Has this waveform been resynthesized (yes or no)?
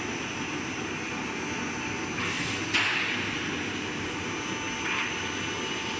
no